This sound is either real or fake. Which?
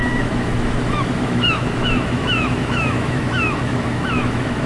fake